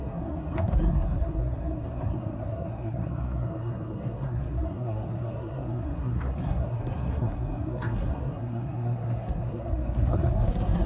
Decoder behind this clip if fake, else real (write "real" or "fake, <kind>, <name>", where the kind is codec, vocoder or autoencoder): fake, codec, SNAC